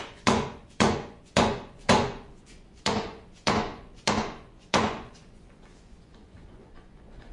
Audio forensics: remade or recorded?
remade